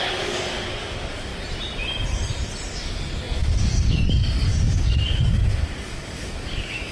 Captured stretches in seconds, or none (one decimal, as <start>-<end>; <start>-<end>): 1.3-2.7